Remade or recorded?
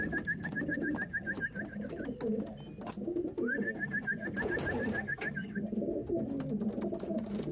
recorded